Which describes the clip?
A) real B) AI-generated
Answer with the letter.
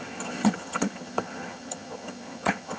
B